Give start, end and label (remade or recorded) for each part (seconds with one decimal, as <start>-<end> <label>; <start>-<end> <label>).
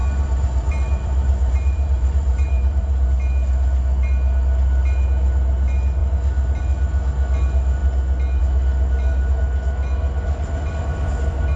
0.0-3.1 remade; 3.1-11.6 recorded